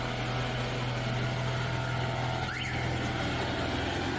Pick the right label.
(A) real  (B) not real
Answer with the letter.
A